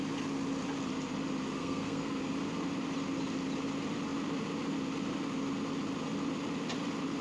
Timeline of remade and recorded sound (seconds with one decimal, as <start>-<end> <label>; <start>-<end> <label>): 0.0-1.6 recorded; 1.6-2.2 remade; 2.2-7.2 recorded